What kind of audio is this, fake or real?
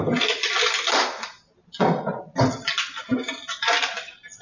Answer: real